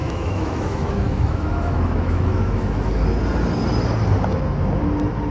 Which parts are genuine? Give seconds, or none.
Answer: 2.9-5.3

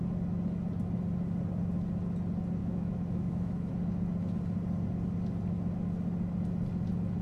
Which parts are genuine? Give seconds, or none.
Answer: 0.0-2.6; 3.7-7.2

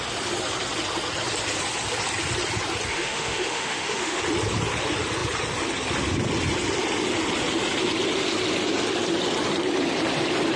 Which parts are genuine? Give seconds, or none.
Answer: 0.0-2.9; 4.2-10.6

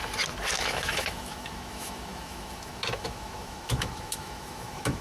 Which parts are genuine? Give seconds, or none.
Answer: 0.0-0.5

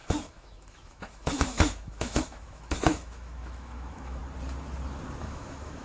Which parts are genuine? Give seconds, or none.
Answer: 4.2-5.2

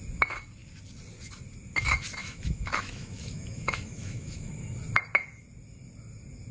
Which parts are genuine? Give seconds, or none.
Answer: 0.0-2.2; 4.5-6.5

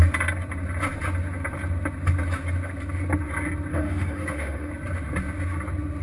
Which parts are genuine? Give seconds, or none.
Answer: 0.0-3.7; 4.7-6.0